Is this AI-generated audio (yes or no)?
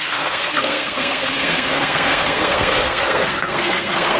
yes